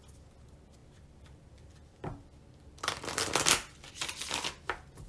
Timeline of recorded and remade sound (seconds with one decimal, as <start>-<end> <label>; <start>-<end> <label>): 0.0-5.1 recorded